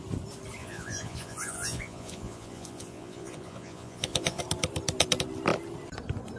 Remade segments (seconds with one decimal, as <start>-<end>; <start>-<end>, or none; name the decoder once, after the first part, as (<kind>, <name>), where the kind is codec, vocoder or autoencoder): 0.6-4.4 (vocoder, Vocos)